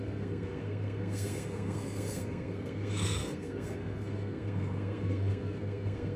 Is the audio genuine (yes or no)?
no